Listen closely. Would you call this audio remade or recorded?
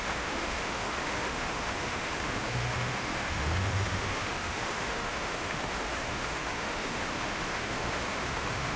remade